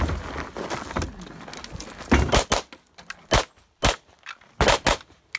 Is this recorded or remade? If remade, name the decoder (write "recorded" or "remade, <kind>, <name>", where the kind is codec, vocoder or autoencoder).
recorded